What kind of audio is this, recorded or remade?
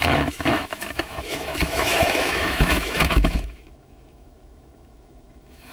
remade